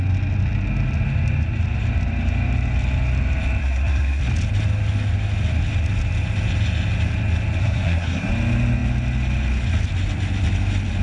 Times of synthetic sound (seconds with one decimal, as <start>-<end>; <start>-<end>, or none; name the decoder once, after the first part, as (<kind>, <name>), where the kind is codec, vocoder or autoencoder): 3.6-4.2 (codec, SNAC); 7.6-8.3